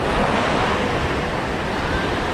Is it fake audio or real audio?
fake